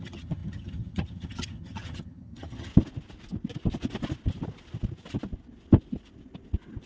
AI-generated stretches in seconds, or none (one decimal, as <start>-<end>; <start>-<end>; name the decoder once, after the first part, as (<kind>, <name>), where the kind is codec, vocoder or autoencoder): 0.0-2.7 (vocoder, HiFi-GAN)